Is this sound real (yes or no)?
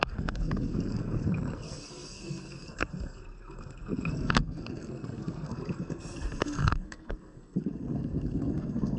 no